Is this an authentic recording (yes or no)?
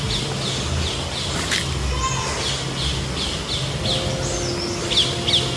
yes